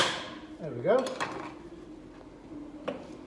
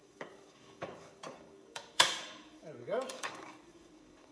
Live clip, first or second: first